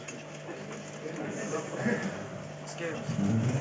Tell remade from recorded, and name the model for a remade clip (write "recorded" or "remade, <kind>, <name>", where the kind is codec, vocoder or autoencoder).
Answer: recorded